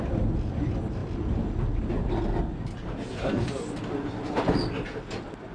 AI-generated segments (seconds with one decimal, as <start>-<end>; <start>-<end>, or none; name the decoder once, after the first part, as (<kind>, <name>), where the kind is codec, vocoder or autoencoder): none